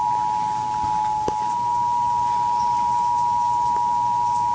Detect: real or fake real